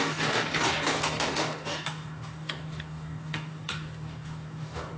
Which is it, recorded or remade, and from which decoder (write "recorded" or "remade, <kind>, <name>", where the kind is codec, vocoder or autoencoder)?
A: remade, codec, DAC